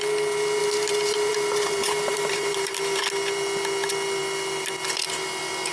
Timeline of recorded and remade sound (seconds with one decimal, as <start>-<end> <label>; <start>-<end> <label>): 0.0-0.6 recorded; 0.6-3.0 remade; 3.0-5.7 recorded